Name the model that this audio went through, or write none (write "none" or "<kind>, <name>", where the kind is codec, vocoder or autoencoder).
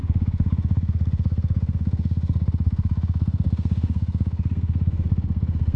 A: codec, SNAC